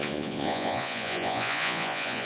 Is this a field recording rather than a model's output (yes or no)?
no